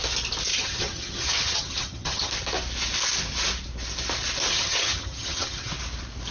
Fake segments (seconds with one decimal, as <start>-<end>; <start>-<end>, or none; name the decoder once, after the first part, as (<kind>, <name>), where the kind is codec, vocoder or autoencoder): 0.5-2.3 (vocoder, HiFi-GAN); 4.5-5.7